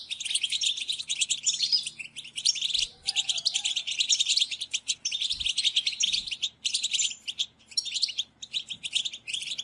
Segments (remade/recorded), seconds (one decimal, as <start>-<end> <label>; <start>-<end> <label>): 0.0-1.1 recorded; 1.1-5.3 remade; 5.3-6.2 recorded; 6.2-9.6 remade